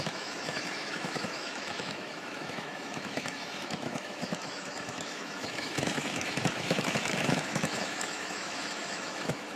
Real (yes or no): no